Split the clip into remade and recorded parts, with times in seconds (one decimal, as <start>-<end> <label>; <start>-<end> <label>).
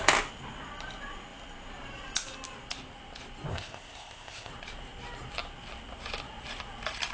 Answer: 0.0-3.5 recorded; 3.5-4.5 remade; 4.5-7.1 recorded